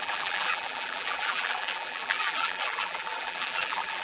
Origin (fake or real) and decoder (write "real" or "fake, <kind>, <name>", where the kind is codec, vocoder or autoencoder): fake, vocoder, BigVGAN v2